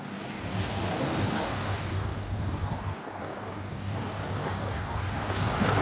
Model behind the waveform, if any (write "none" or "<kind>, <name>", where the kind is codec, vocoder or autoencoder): codec, DAC